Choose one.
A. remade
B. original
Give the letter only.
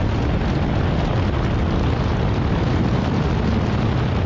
B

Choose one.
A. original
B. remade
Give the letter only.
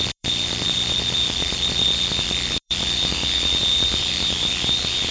B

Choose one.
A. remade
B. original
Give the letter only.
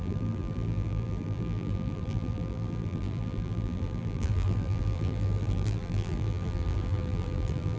A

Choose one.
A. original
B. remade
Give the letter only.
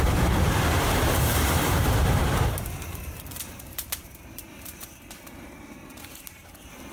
B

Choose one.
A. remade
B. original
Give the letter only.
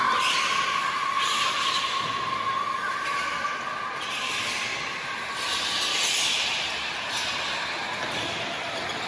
B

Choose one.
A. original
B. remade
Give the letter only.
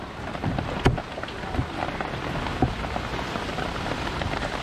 A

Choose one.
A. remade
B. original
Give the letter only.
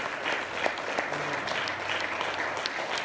B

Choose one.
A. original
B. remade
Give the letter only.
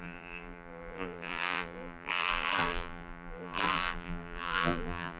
B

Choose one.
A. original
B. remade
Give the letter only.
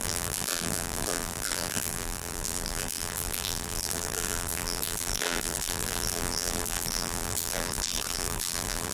B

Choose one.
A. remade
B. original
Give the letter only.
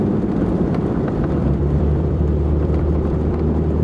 A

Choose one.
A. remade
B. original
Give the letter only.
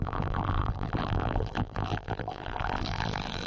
A